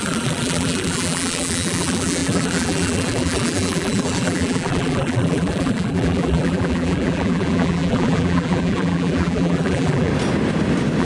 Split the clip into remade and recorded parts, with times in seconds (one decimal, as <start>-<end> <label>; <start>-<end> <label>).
0.0-10.1 remade; 10.1-11.0 recorded